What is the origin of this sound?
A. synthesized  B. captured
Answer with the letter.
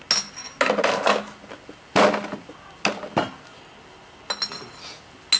B